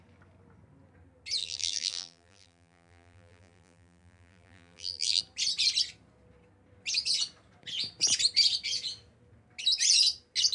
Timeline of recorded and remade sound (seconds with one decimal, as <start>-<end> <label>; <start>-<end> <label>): 0.0-1.4 recorded; 1.4-5.2 remade; 5.2-10.5 recorded